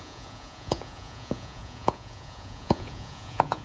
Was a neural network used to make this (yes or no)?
yes